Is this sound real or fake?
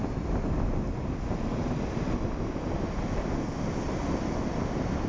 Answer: real